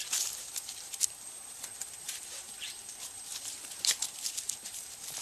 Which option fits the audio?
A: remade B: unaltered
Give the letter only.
A